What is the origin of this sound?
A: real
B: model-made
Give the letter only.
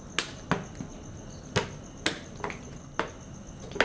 A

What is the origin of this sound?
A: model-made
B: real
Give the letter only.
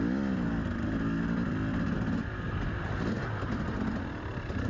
B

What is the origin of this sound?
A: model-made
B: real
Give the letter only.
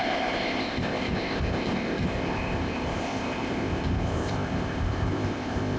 A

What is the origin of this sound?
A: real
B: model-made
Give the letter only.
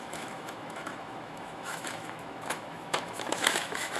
B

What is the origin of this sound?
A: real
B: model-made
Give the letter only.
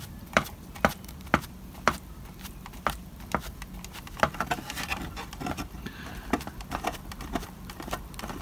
B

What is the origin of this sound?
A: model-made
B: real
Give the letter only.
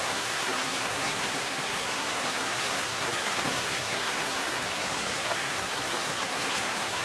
A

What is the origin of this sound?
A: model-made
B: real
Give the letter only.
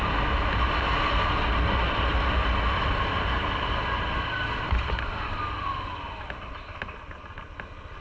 B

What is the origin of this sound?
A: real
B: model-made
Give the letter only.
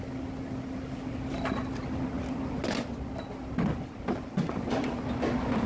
A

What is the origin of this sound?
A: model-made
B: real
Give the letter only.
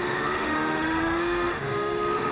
A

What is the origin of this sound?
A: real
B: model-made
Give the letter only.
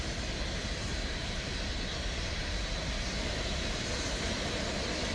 A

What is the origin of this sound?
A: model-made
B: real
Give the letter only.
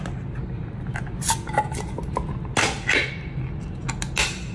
B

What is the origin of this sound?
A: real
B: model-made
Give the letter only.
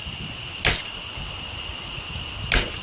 A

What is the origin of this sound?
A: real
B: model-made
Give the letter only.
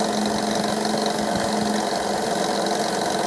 A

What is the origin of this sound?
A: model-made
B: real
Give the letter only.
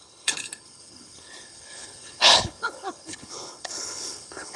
A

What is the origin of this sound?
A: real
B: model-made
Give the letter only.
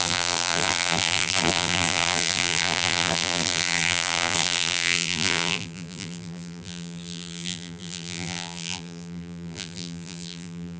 B